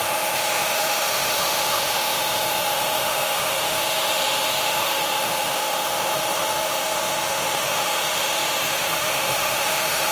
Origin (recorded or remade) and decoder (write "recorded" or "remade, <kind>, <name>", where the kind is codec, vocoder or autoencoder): remade, autoencoder, DAC-VAE